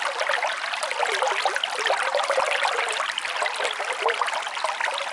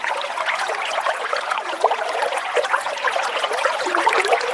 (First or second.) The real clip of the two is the first